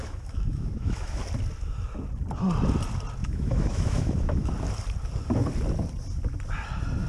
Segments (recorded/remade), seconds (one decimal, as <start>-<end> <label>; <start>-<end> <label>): 0.0-1.2 remade; 1.2-3.2 recorded; 3.2-4.5 remade; 4.5-7.1 recorded